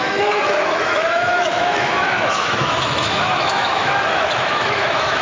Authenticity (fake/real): fake